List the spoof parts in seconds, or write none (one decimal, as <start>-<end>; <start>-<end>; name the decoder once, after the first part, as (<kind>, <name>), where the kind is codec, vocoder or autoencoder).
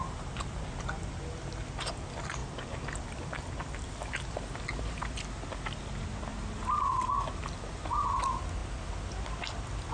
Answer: none